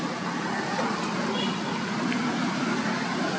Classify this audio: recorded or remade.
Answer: recorded